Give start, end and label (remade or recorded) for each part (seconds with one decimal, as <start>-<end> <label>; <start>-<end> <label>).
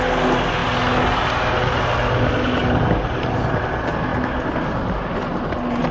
0.0-2.6 recorded; 2.6-3.6 remade; 3.6-5.9 recorded